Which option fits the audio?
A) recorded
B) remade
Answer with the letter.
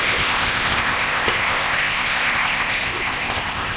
B